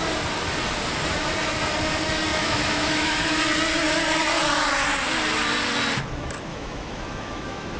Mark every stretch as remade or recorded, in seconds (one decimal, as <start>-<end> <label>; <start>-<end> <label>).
0.0-2.3 recorded; 2.3-3.4 remade; 3.4-6.5 recorded; 6.5-7.8 remade

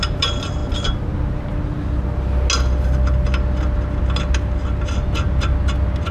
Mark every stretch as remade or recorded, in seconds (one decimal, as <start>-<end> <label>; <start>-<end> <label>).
0.0-6.1 recorded

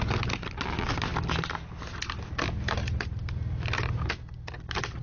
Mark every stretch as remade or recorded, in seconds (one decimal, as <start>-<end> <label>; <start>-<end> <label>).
0.0-5.0 recorded